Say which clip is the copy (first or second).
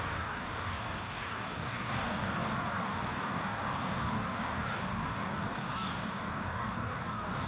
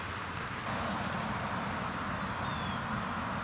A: first